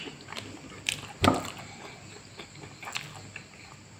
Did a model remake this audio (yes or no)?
no